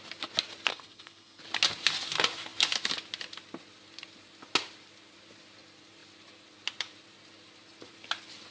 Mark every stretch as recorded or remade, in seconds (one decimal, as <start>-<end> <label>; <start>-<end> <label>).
0.0-0.7 recorded; 0.7-1.4 remade; 1.4-8.5 recorded